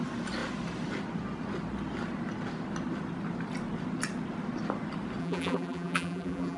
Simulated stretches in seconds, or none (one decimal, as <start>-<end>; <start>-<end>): 5.2-6.6